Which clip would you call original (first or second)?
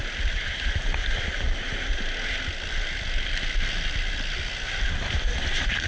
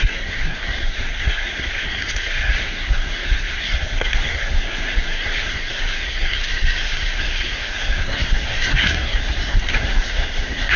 first